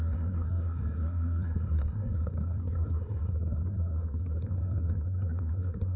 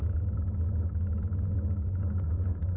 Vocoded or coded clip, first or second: first